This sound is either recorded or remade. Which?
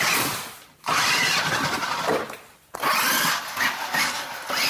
recorded